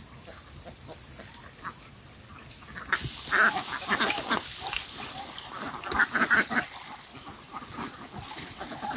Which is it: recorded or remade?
recorded